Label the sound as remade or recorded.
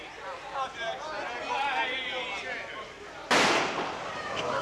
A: recorded